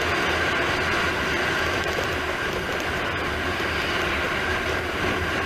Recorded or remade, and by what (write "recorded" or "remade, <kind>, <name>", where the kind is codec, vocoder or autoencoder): recorded